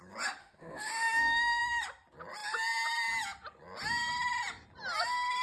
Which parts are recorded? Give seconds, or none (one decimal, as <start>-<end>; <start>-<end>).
0.0-0.4; 1.6-5.4